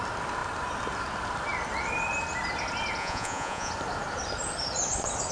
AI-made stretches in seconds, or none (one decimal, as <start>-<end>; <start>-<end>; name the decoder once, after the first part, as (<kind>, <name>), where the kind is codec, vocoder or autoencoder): 3.0-3.7 (vocoder, Vocos)